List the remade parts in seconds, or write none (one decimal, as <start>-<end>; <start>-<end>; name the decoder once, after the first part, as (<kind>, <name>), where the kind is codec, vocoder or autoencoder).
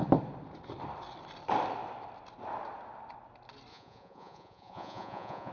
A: 3.7-5.5 (vocoder, Vocos)